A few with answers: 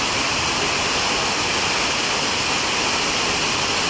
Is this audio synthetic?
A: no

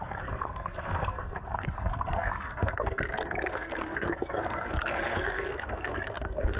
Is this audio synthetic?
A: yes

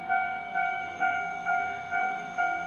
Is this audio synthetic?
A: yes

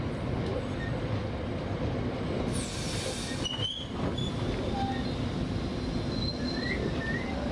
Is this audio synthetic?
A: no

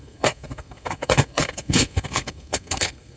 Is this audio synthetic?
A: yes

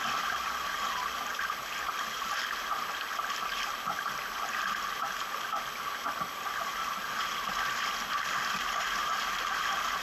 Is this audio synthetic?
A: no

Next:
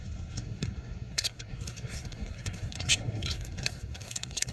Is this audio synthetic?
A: yes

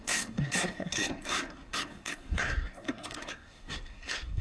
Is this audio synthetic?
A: yes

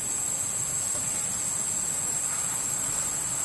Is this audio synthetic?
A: no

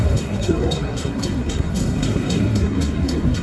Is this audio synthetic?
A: yes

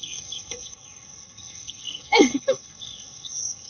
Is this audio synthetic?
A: yes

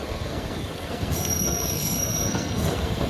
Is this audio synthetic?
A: yes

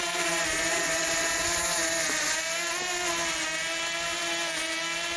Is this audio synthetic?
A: no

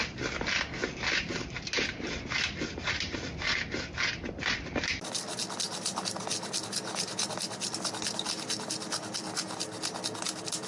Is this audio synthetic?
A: no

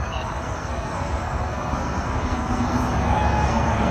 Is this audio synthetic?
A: yes